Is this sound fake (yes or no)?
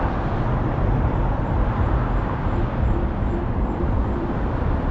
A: no